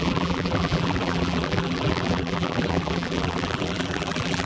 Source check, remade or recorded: remade